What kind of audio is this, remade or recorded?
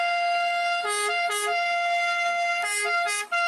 recorded